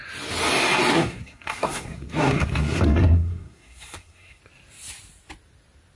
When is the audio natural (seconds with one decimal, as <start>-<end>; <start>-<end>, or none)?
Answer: 0.0-0.9; 4.4-6.0